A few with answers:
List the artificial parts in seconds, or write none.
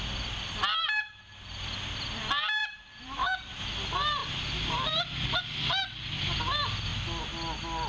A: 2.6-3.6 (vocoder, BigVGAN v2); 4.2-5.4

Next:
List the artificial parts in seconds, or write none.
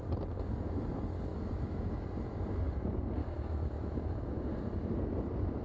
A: 1.3-1.9 (autoencoder, DAC-VAE); 3.2-4.4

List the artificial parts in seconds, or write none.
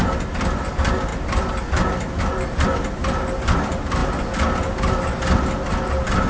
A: none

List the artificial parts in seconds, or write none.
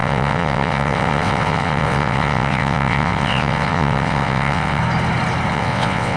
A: 0.0-4.8 (vocoder, WaveNeXt); 5.5-6.2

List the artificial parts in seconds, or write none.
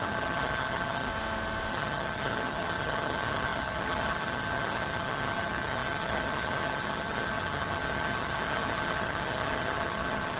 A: 0.0-1.1 (vocoder, HiFi-GAN); 1.7-10.4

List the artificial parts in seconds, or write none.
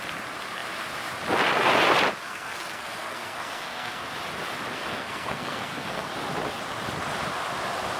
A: 2.2-4.0 (codec, SNAC); 4.7-6.1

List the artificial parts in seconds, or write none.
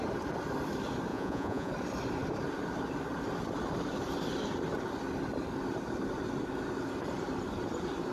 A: 1.1-1.7 (vocoder, Vocos)